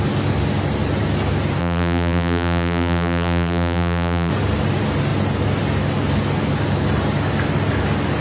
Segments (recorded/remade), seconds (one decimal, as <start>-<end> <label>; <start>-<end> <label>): 0.0-1.6 recorded; 1.6-4.3 remade; 4.3-8.2 recorded